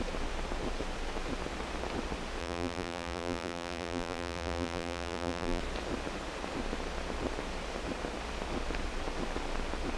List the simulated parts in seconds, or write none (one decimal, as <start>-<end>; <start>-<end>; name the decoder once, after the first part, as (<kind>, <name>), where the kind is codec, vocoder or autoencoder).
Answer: 2.4-5.6 (vocoder, BigVGAN v2)